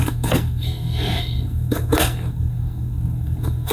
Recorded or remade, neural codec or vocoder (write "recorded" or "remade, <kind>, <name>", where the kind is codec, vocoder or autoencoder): remade, codec, SNAC